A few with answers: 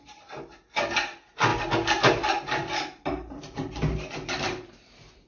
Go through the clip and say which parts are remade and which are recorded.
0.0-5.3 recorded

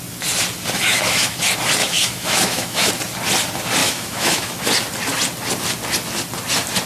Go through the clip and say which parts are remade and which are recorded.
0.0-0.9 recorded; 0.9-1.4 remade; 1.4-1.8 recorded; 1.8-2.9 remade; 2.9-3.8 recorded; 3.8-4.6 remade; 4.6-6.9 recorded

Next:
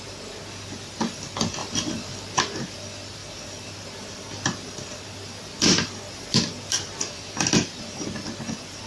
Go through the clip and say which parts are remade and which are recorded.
0.0-1.6 recorded; 1.6-2.4 remade; 2.4-3.2 recorded; 3.2-7.9 remade; 7.9-8.9 recorded